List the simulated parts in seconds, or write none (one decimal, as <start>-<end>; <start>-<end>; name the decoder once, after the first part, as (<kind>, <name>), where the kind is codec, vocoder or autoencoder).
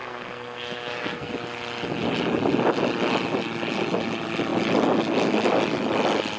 0.0-1.3 (codec, SNAC)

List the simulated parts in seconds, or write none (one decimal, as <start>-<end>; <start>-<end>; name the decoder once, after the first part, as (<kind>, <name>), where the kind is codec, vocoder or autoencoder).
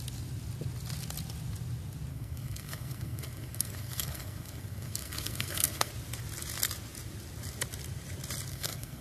2.1-5.9 (codec, SNAC); 8.5-9.0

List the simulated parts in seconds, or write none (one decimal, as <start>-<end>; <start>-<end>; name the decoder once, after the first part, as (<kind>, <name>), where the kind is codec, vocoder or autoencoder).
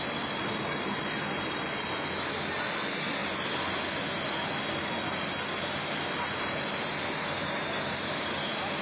none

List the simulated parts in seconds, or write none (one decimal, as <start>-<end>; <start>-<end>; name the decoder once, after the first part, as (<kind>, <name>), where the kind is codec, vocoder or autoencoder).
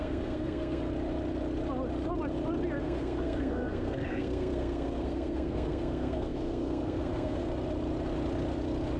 0.0-0.8 (codec, SNAC); 2.8-7.5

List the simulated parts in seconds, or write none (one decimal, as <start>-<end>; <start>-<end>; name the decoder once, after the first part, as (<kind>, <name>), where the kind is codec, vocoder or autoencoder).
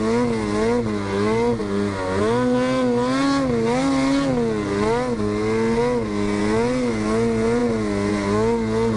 none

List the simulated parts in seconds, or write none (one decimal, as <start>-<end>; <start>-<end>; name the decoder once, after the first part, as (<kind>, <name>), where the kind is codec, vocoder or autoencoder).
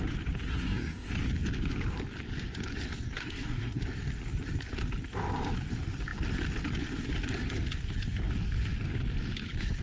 0.5-1.1 (codec, SNAC); 3.2-3.8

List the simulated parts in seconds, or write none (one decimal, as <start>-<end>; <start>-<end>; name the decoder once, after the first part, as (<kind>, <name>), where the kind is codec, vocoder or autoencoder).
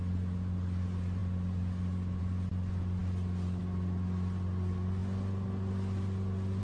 none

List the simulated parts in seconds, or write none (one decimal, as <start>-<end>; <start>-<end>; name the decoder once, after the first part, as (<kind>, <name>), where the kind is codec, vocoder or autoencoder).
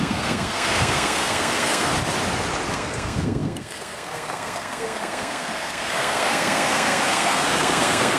0.0-1.9 (codec, SNAC); 2.7-8.2